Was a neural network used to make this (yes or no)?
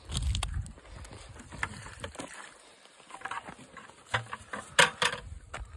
no